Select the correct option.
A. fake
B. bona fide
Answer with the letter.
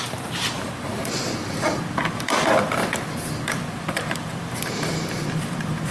A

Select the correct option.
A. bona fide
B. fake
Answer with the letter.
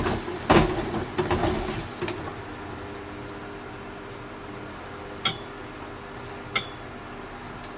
A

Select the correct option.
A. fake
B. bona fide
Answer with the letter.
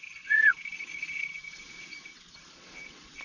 A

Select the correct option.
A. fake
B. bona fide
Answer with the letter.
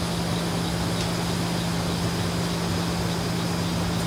B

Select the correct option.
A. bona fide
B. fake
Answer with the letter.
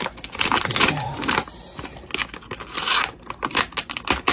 A